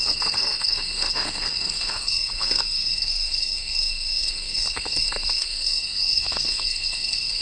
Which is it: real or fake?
fake